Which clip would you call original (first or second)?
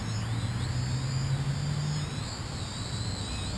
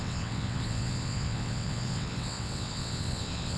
first